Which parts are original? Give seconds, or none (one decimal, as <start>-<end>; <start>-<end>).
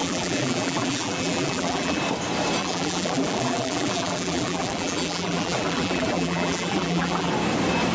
2.0-2.6; 7.3-7.9